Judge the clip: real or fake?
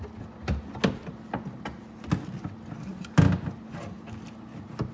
real